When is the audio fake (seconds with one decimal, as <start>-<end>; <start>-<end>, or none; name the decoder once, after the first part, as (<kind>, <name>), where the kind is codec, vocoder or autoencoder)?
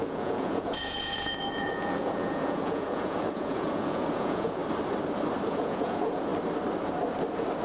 0.0-4.6 (vocoder, Vocos); 5.5-6.3